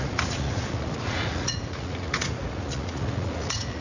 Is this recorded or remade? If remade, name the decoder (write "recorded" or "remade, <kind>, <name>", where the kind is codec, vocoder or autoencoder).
remade, vocoder, Vocos